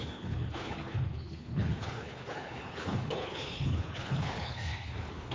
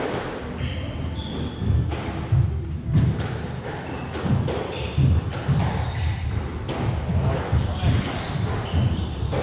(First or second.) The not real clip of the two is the first